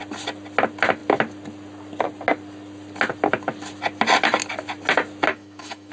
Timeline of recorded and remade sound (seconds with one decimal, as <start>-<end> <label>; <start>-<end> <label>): 0.0-5.3 recorded; 5.3-5.9 remade